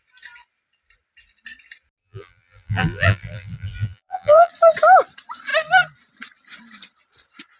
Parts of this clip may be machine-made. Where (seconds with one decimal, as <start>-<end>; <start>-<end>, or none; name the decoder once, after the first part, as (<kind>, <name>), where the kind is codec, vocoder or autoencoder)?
2.0-4.5 (vocoder, BigVGAN v2)